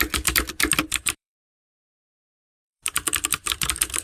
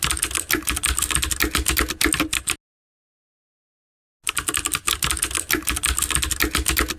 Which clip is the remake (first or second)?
first